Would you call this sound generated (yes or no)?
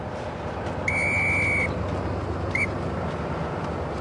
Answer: no